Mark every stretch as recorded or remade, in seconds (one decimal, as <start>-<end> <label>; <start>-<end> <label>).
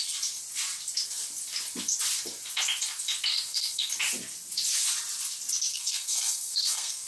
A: 0.0-3.3 recorded; 3.3-3.9 remade; 3.9-5.7 recorded; 5.7-7.1 remade